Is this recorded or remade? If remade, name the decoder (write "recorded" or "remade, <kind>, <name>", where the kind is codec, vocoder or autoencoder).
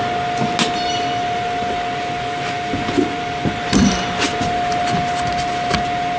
recorded